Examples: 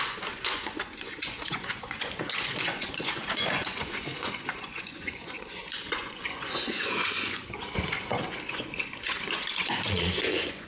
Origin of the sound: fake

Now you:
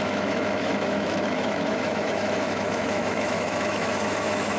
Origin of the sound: fake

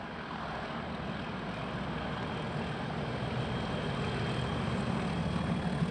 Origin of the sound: real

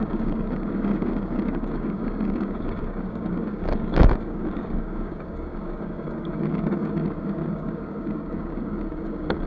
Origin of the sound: fake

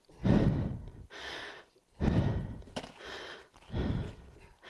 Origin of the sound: real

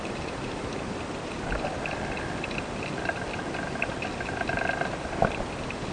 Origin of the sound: real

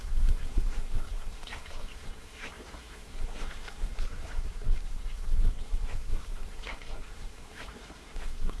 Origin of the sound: fake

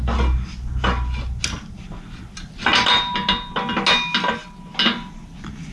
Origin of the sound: real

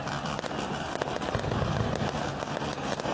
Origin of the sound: real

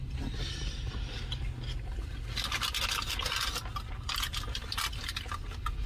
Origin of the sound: real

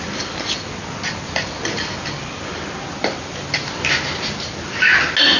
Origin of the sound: real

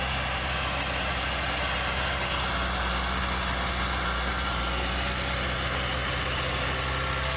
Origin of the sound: real